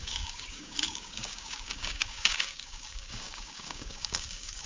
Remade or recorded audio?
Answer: remade